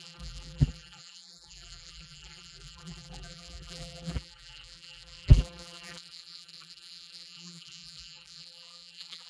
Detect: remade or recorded remade